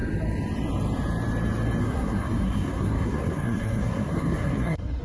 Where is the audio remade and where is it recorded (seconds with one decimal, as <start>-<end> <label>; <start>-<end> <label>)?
0.0-1.8 recorded; 1.8-5.0 remade